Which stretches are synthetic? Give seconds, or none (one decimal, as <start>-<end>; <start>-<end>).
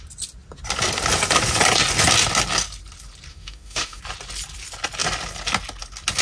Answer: 3.3-4.0